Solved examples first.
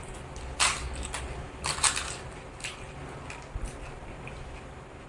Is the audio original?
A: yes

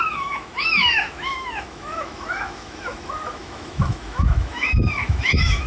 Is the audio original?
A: no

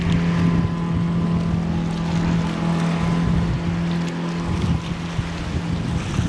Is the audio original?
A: yes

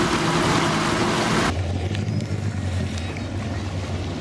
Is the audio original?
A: yes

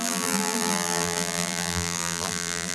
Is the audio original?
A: no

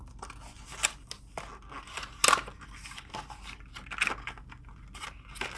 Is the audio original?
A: yes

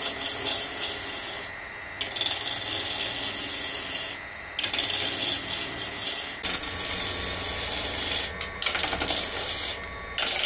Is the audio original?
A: yes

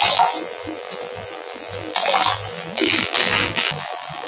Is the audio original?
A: no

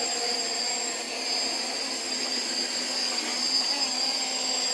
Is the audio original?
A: yes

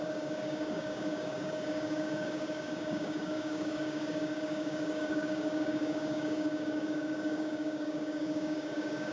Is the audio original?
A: no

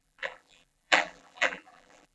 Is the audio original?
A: no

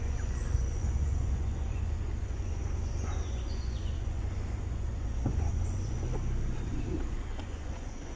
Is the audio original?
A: no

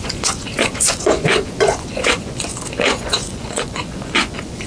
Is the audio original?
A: no